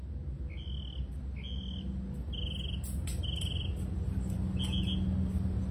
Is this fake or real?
real